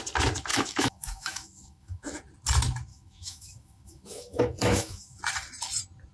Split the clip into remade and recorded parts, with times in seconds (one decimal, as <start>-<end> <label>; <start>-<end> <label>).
0.0-0.5 recorded; 0.5-2.2 remade; 2.2-2.9 recorded; 2.9-5.2 remade; 5.2-6.1 recorded